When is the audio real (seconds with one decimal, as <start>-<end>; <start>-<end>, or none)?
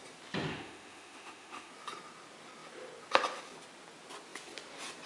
0.0-0.5; 1.7-5.1